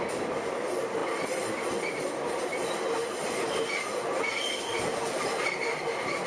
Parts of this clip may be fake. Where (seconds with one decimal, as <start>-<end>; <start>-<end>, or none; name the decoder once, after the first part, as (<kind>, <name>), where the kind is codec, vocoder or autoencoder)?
none